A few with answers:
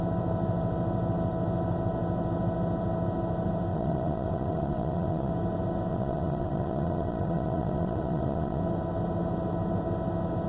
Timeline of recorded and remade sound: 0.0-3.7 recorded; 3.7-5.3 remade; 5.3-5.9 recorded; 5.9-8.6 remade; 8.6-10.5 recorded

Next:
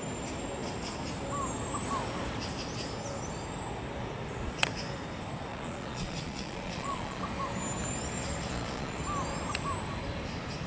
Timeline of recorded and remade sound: 0.0-5.5 recorded; 5.5-7.2 remade; 7.2-8.5 recorded; 8.5-9.0 remade; 9.0-10.7 recorded

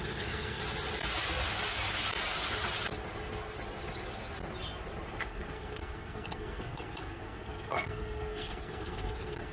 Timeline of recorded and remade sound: 0.0-0.6 remade; 0.6-5.2 recorded; 5.2-9.5 remade

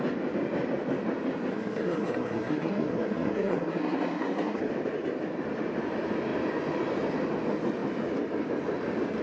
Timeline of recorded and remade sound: 0.0-1.5 recorded; 1.5-4.7 remade; 4.7-9.2 recorded

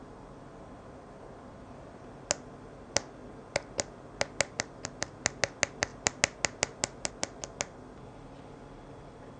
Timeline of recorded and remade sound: 0.0-9.4 recorded

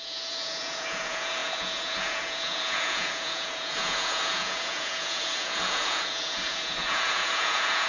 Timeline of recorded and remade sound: 0.0-7.9 remade

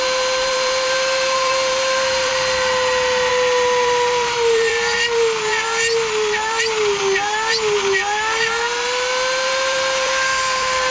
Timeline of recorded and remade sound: 0.0-2.3 remade; 2.3-3.3 recorded; 3.3-10.9 remade

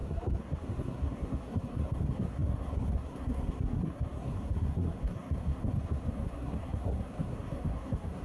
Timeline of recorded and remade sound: 0.0-8.2 remade